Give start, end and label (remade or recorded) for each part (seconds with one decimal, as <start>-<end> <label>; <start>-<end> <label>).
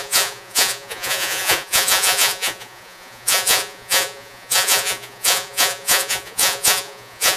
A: 0.0-7.4 remade